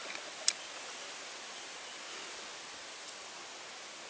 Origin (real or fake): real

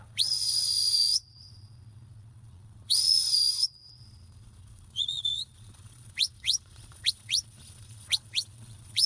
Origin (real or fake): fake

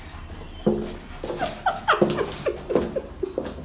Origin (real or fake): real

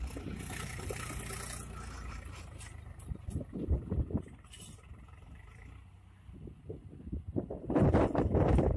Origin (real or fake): real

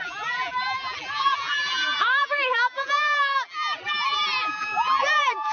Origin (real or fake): fake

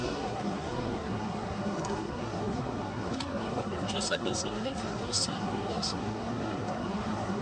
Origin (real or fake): fake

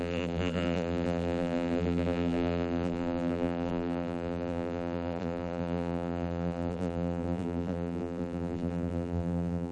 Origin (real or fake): fake